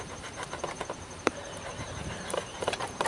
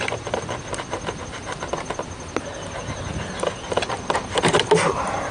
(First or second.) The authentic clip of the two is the second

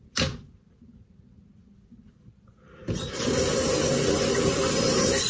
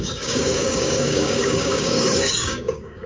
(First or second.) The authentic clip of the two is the first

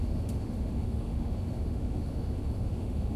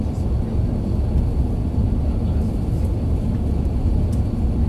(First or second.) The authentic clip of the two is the second